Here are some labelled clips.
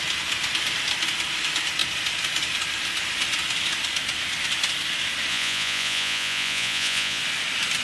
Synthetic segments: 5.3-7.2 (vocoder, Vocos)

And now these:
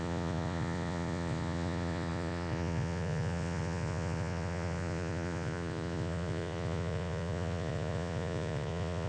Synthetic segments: 0.0-9.1 (vocoder, Vocos)

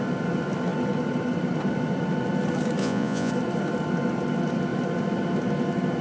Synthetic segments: 2.8-3.3 (vocoder, Vocos)

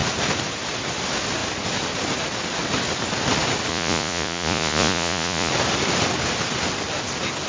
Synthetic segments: 3.7-5.5 (vocoder, Vocos)

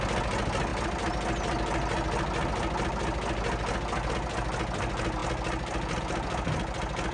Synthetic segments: none